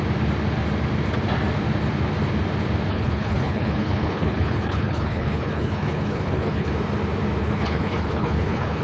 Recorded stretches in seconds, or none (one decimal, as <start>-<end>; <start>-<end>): 0.0-2.9; 6.7-7.4